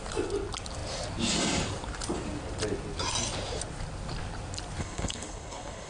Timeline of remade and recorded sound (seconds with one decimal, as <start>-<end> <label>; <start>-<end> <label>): 0.0-4.8 recorded; 4.8-5.9 remade

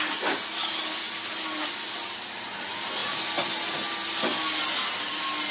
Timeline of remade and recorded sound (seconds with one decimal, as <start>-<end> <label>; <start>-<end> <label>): 0.0-5.5 recorded

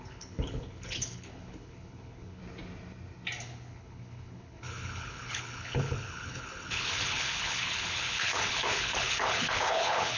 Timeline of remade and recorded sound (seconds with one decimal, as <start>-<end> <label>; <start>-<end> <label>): 0.0-2.4 remade; 2.4-3.4 recorded; 3.4-10.2 remade

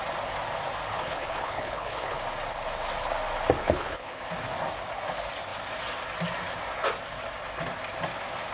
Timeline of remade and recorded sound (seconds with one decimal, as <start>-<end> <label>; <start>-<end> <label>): 0.0-0.9 recorded; 0.9-2.2 remade; 2.2-3.6 recorded; 3.6-4.2 remade; 4.2-8.5 recorded

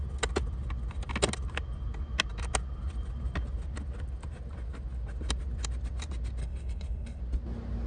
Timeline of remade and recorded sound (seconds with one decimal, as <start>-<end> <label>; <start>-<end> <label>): 0.0-6.4 recorded; 6.4-7.2 remade; 7.2-7.9 recorded

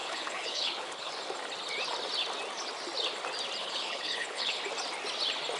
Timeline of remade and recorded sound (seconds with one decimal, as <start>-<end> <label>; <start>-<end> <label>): 0.0-1.1 remade; 1.1-3.6 recorded; 3.6-4.6 remade; 4.6-5.6 recorded